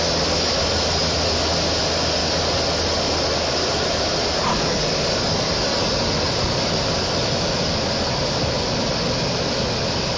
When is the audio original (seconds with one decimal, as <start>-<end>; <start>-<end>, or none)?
0.0-5.9; 8.1-10.2

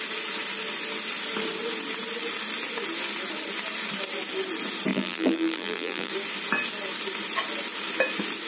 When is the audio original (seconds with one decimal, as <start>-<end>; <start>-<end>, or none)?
0.0-4.9; 6.1-8.5

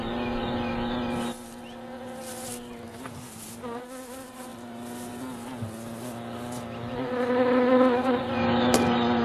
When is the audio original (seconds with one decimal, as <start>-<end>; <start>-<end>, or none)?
0.0-9.2

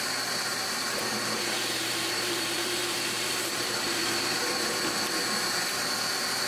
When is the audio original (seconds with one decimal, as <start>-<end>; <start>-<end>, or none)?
0.0-0.5; 4.1-6.5

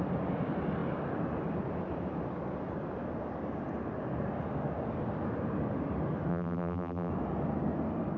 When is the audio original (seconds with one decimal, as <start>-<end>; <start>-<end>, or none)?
0.0-6.3; 7.1-8.2

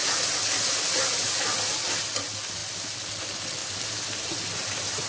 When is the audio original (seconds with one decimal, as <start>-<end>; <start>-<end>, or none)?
0.0-3.6

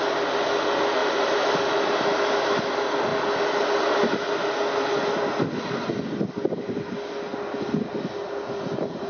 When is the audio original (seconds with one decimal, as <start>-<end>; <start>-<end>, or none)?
0.0-1.0; 1.6-9.1

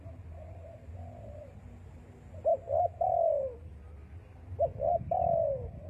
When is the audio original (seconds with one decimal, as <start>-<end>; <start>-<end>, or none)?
0.0-5.9